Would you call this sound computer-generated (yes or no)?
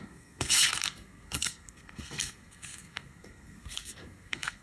yes